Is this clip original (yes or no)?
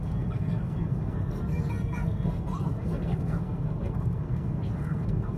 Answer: no